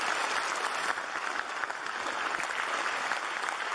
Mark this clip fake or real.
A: real